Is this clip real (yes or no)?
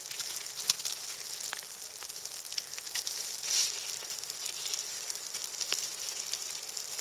yes